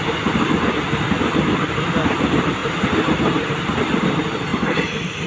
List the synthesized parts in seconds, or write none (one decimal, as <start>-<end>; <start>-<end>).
0.0-2.6; 3.8-5.3